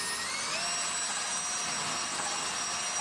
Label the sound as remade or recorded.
recorded